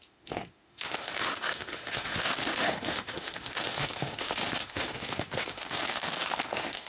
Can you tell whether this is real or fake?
fake